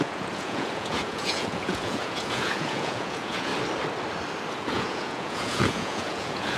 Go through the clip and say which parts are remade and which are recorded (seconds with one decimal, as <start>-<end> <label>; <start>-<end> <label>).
0.0-3.5 remade; 3.5-4.5 recorded; 4.5-6.6 remade